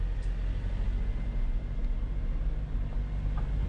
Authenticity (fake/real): real